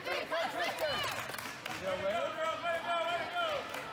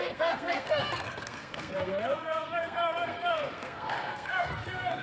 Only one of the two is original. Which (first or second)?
first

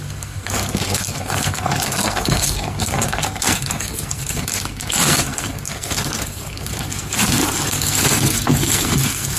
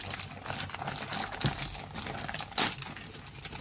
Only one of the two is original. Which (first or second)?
second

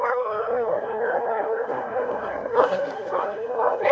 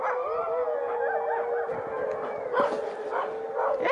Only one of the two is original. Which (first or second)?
second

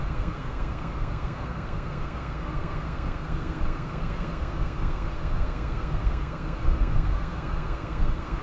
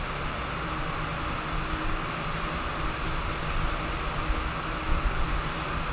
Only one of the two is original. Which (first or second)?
second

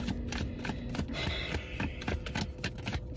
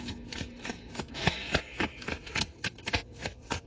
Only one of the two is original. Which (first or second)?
first